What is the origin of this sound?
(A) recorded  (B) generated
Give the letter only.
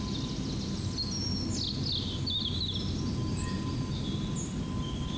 A